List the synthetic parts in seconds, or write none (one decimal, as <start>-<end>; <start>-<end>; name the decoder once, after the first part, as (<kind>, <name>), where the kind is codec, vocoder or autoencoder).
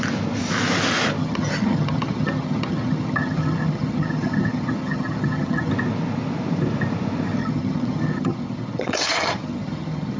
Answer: 1.2-5.7 (vocoder, HiFi-GAN); 7.4-10.2